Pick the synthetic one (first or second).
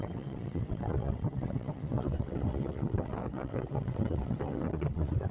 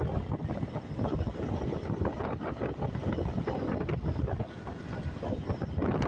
first